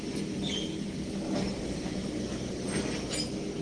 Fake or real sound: real